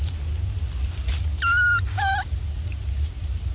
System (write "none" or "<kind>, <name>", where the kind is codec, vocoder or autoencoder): none